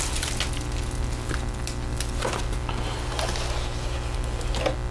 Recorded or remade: recorded